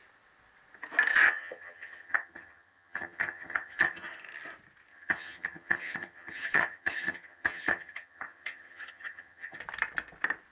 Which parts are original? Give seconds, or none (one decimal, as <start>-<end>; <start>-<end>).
0.0-1.1; 4.2-4.9; 9.6-10.5